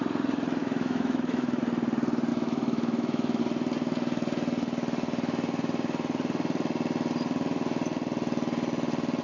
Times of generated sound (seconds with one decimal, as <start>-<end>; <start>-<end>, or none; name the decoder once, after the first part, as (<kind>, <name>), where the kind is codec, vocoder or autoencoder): 0.6-1.6 (autoencoder, DAC-VAE); 2.3-3.4

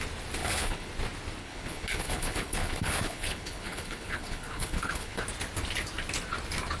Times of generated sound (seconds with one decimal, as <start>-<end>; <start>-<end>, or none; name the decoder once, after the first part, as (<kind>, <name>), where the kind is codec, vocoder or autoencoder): 0.4-0.9 (codec, HILCodec); 1.4-5.2

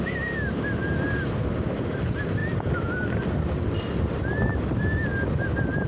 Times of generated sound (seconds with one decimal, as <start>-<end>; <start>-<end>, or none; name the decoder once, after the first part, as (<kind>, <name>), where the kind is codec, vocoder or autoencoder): 2.4-4.2 (vocoder, BigVGAN v2)

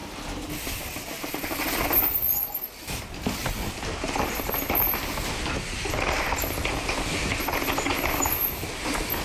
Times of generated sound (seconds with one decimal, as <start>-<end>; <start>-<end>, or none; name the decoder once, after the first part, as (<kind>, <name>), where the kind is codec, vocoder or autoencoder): 1.3-2.2 (vocoder, BigVGAN v2)

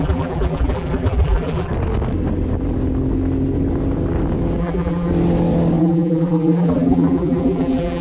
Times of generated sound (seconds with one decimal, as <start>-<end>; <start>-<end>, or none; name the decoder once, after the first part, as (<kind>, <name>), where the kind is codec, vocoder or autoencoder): 0.0-1.7 (vocoder, BigVGAN v2); 4.6-5.1; 5.8-8.0

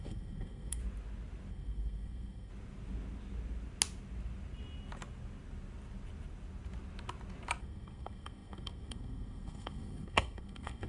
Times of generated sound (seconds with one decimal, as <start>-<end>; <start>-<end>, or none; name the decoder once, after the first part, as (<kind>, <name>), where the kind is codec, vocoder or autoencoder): 0.0-0.8 (codec, SNAC); 1.5-2.5; 7.6-10.9

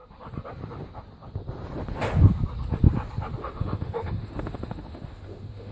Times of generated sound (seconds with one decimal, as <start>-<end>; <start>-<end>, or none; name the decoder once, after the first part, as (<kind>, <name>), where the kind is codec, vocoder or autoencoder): 3.4-5.7 (autoencoder, DAC-VAE)

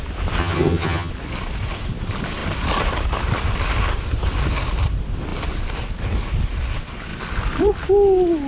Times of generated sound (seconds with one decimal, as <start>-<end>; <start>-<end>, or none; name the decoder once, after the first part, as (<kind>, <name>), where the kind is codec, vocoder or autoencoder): 0.4-1.1 (vocoder, HiFi-GAN)